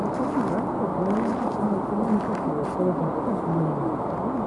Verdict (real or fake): real